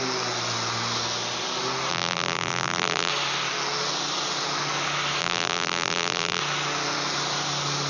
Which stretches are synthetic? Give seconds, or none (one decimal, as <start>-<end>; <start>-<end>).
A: 1.9-3.1; 5.2-6.4